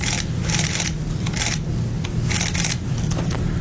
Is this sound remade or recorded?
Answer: recorded